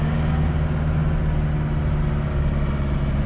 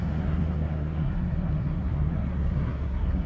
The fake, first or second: second